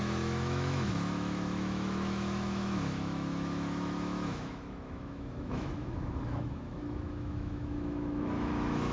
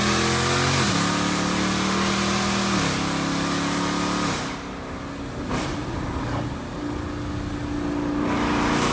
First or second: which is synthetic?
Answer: first